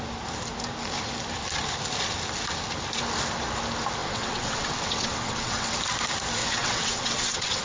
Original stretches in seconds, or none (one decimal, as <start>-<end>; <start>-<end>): 0.0-4.0; 5.7-6.4